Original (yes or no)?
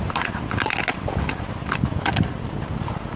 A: yes